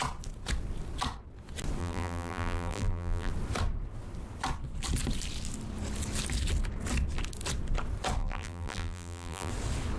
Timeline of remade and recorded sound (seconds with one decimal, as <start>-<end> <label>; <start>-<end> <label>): 0.0-1.8 recorded; 1.8-3.3 remade; 3.3-8.2 recorded; 8.2-9.5 remade; 9.5-10.0 recorded